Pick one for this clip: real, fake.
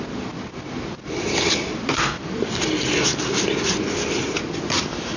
real